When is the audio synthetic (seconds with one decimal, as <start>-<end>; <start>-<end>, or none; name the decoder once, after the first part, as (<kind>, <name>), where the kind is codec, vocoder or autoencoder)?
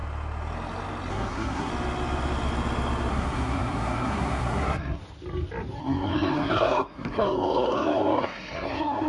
1.1-1.7 (codec, SNAC); 3.1-5.0; 5.8-9.1